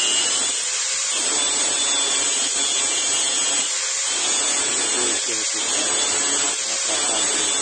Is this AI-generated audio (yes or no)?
no